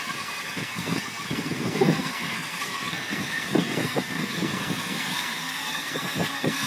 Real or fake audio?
fake